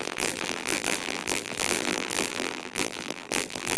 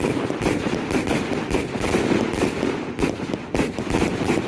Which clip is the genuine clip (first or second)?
second